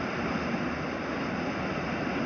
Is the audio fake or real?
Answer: real